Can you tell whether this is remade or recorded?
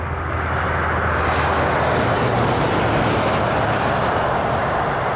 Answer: recorded